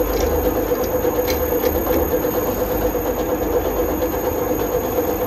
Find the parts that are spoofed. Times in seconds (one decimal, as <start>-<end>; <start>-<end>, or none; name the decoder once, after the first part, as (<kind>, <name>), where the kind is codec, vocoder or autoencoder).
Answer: none